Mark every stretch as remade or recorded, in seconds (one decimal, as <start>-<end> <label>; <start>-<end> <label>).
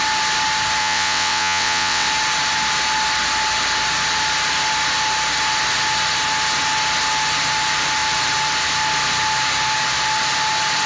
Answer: 0.0-0.8 recorded; 0.8-2.1 remade; 2.1-10.9 recorded